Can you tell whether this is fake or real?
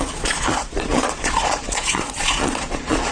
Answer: fake